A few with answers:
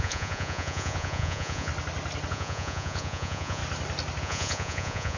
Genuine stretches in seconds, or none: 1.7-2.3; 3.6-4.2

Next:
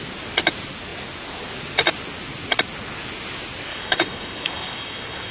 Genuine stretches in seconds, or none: 0.0-3.7